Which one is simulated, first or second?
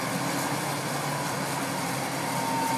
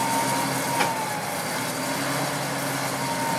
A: first